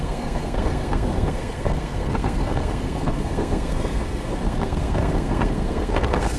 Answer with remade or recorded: remade